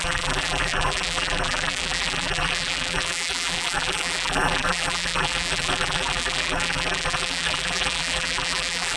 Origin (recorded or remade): remade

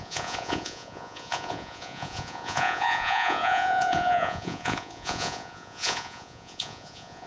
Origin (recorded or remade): remade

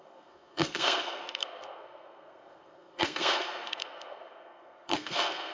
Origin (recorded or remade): remade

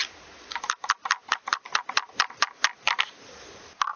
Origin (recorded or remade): recorded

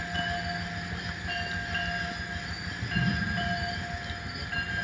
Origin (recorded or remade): recorded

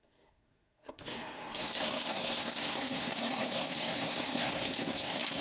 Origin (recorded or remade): remade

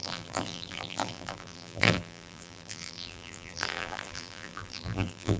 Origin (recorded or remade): remade